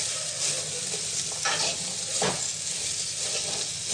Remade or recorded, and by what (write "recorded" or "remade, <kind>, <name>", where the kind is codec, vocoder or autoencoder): recorded